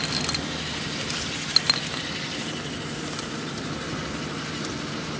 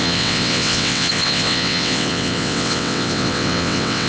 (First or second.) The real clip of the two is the first